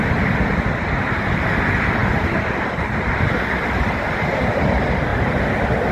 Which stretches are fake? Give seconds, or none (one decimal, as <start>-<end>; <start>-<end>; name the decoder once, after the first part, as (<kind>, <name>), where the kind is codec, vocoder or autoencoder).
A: none